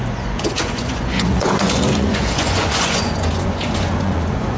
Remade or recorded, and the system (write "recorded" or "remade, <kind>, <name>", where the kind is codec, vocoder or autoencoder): remade, vocoder, Vocos